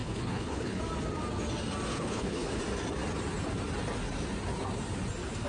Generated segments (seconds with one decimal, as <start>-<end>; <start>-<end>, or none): 0.0-0.8; 1.9-2.6